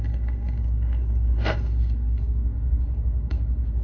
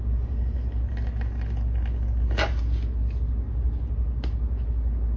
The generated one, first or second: first